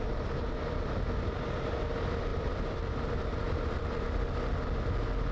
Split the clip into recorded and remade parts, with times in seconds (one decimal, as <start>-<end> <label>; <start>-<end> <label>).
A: 0.0-2.3 recorded; 2.3-4.0 remade; 4.0-5.3 recorded